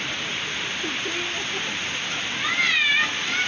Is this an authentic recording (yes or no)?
yes